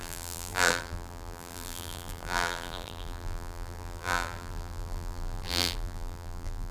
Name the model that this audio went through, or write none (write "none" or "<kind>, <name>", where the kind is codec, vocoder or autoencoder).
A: vocoder, BigVGAN v2